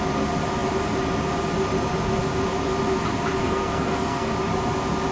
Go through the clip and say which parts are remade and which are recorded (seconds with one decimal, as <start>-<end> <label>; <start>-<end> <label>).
0.0-3.4 recorded; 3.4-4.3 remade; 4.3-5.1 recorded